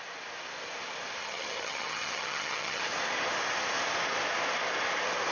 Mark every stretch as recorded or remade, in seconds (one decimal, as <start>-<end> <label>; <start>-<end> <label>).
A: 0.0-1.2 recorded; 1.2-2.8 remade; 2.8-5.3 recorded